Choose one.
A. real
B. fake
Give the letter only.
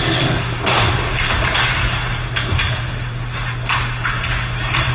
A